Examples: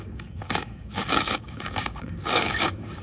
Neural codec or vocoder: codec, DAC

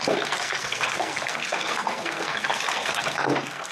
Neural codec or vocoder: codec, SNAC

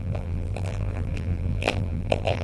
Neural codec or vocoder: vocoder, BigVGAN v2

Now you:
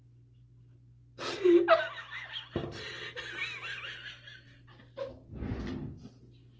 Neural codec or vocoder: none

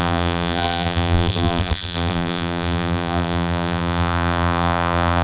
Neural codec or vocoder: vocoder, BigVGAN v2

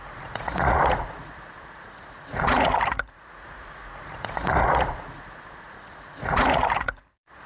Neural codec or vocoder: vocoder, Vocos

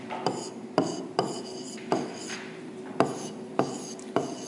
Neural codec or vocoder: none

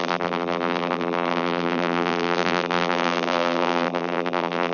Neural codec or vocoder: vocoder, BigVGAN v2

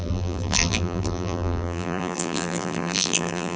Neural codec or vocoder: vocoder, BigVGAN v2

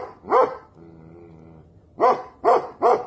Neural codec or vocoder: none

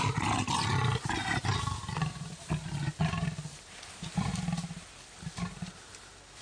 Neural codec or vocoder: none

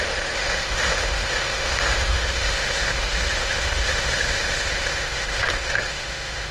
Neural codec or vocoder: autoencoder, DAC-VAE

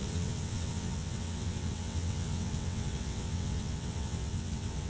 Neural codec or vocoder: vocoder, WaveNeXt